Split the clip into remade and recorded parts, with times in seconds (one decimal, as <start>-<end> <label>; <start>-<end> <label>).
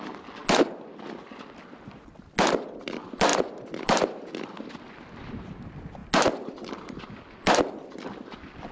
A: 0.0-8.7 recorded